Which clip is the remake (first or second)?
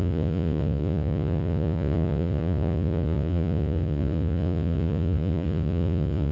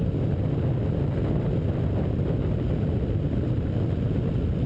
first